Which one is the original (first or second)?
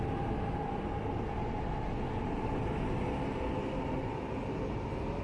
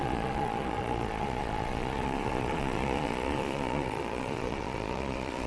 first